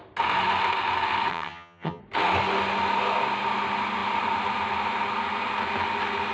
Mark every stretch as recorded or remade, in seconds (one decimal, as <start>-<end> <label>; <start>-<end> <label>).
0.0-1.3 recorded; 1.3-2.0 remade; 2.0-6.3 recorded